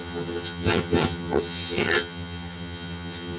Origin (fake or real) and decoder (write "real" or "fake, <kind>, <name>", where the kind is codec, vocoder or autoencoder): fake, vocoder, HiFi-GAN